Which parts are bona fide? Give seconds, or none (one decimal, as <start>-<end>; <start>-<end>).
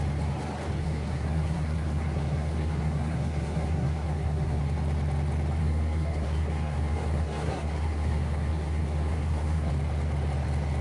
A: 0.0-0.8; 4.6-5.6; 9.7-10.8